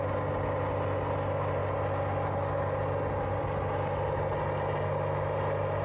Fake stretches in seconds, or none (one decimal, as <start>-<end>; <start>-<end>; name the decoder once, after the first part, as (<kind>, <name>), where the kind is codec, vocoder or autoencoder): none